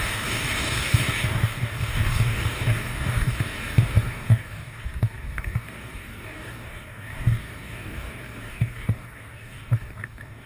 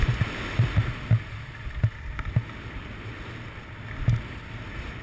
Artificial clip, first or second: first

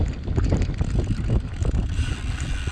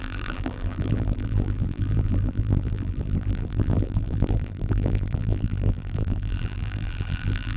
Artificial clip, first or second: second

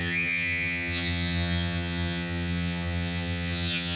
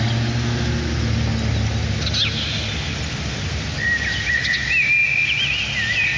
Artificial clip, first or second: first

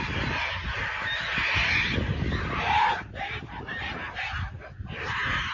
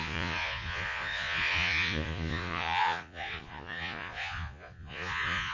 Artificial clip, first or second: second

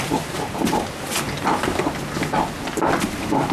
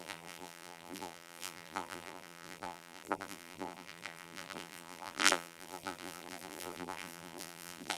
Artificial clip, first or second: second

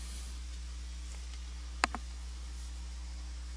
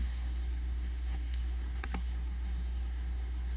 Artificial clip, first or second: second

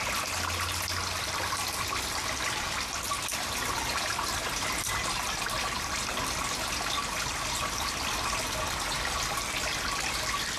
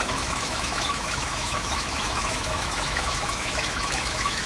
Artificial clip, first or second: second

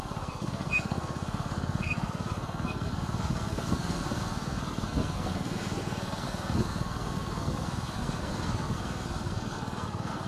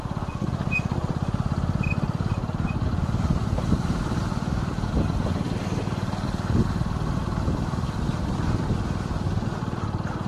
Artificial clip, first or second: first